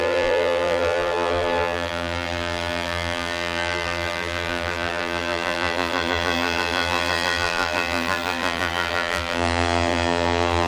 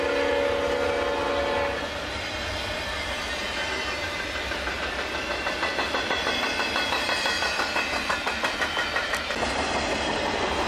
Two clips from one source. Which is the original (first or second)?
second